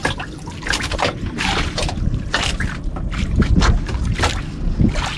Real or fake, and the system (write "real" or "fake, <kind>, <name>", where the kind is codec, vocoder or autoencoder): real